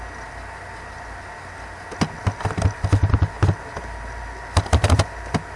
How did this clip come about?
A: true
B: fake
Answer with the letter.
A